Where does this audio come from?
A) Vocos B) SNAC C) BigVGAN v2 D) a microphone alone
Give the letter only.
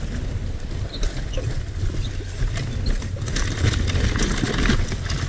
D